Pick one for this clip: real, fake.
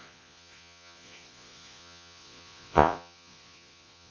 fake